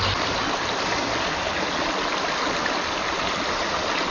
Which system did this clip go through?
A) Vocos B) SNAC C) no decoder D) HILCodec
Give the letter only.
C